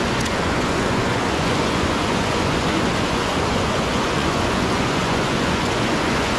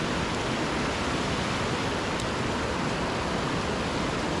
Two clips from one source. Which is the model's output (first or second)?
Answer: first